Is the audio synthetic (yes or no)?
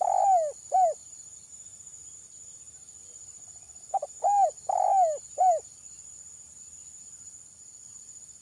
no